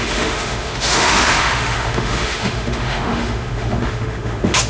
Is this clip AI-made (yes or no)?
yes